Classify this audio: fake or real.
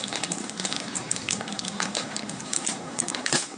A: fake